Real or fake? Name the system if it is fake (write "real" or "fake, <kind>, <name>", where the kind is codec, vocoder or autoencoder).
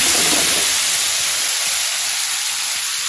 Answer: real